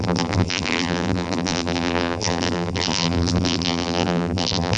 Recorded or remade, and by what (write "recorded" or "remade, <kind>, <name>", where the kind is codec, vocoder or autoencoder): remade, vocoder, BigVGAN v2